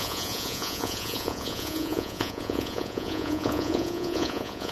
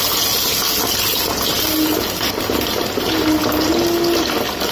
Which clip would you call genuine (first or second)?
second